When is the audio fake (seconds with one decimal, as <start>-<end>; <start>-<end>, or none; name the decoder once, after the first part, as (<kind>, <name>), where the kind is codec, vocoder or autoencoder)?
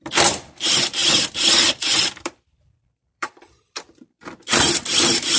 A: 0.0-1.0 (vocoder, BigVGAN v2); 1.7-5.4